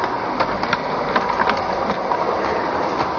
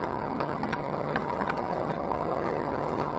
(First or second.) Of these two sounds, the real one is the first